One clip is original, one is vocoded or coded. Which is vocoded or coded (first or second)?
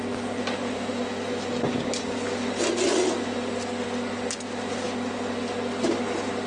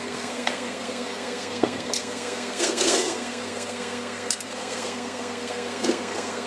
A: second